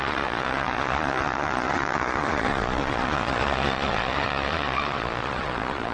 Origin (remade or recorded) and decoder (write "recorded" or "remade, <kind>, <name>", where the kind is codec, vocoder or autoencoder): remade, vocoder, Vocos